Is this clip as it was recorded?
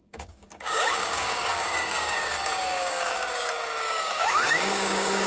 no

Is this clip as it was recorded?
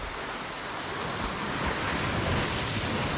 yes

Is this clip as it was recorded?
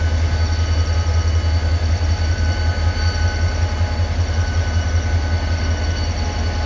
yes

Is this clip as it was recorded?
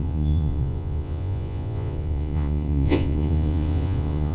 no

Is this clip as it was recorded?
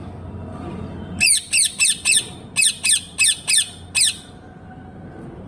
yes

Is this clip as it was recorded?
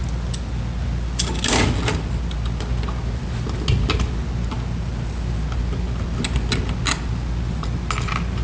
yes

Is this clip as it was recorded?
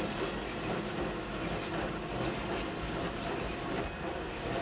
yes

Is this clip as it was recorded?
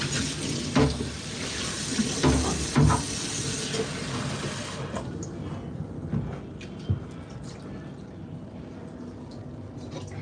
yes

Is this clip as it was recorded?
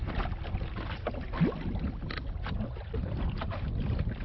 yes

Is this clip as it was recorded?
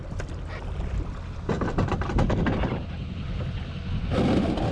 yes